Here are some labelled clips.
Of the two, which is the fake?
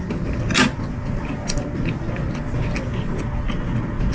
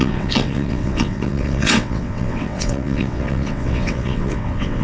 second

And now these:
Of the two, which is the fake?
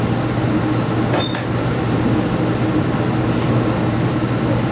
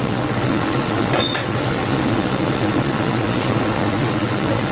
second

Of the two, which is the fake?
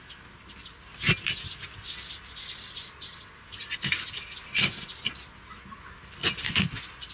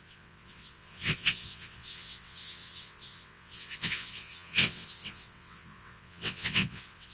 second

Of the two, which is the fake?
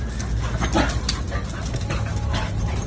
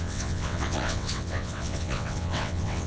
second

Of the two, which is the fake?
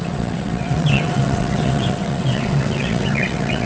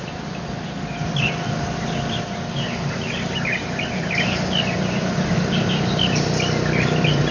first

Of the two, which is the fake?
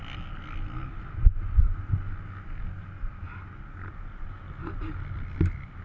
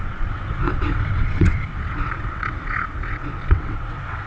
second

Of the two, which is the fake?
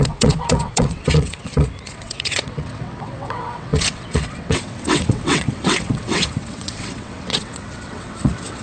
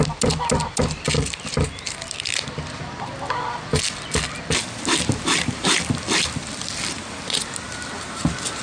first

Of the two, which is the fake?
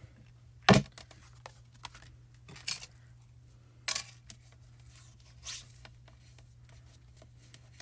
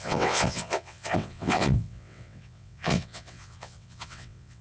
second